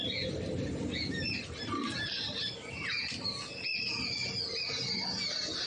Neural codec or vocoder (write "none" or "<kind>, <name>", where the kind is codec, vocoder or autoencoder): none